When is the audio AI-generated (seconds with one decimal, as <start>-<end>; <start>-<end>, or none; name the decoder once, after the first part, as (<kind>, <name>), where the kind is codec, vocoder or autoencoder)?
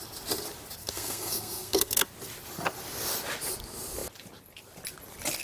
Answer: 0.8-2.1 (codec, SNAC)